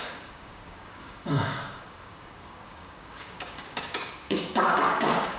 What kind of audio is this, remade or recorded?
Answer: remade